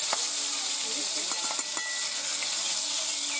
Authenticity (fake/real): real